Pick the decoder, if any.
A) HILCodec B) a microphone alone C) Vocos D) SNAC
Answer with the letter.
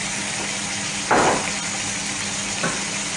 B